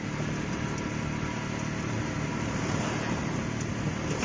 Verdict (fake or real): real